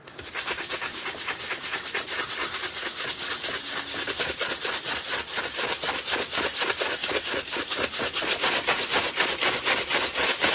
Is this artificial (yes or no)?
no